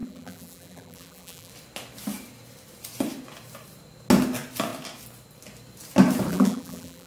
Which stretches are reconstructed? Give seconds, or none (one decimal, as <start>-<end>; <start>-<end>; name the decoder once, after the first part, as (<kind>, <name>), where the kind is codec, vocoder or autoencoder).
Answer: 0.0-1.5 (vocoder, BigVGAN v2); 6.3-7.1